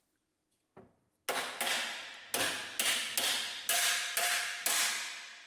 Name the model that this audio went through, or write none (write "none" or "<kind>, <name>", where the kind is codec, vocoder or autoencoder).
none